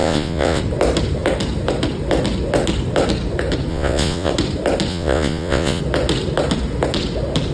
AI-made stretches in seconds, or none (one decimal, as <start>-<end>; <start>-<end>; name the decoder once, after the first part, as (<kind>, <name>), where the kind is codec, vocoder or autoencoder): 0.0-0.6 (vocoder, Vocos); 3.7-4.3; 4.9-5.8